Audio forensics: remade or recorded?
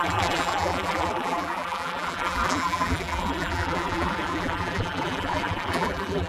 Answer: remade